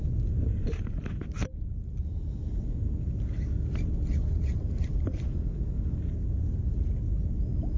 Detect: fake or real real